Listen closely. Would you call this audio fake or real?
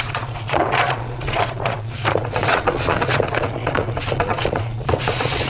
fake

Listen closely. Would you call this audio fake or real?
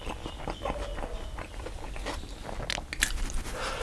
real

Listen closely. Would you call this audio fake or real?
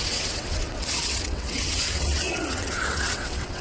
fake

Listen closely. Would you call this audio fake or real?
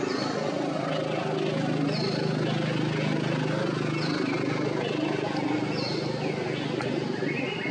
real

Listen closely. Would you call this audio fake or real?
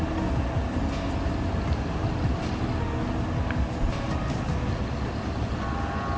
real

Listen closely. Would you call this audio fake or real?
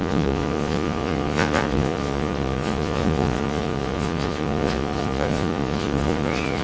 fake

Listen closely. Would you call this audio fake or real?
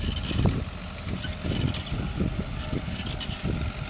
real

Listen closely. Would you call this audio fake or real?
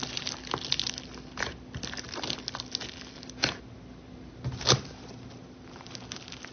real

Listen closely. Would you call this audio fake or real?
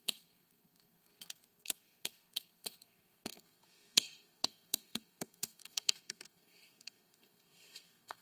fake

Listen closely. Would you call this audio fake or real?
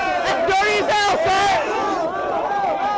real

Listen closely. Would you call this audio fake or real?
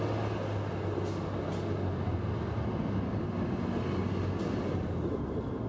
real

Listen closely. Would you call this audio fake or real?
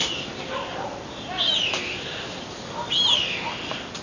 real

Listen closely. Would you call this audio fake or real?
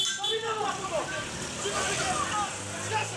real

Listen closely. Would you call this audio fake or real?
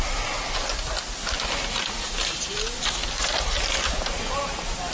real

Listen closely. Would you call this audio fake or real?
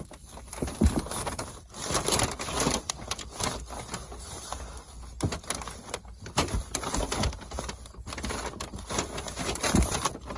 real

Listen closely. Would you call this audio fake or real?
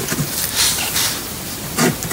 real